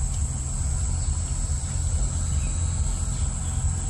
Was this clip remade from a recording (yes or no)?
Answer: no